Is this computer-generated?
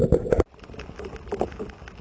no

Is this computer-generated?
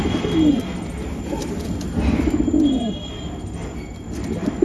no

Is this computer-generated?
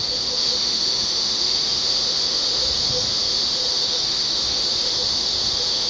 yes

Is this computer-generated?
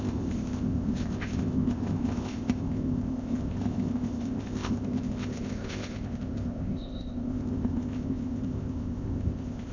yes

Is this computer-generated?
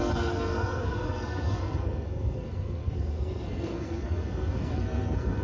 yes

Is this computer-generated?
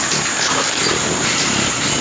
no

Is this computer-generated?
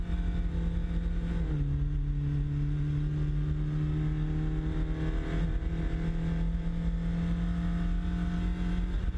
no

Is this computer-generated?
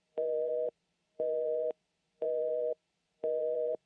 yes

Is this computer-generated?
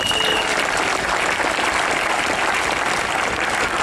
no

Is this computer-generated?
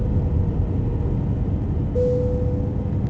no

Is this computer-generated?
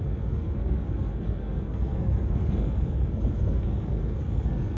yes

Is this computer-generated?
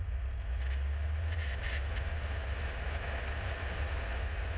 no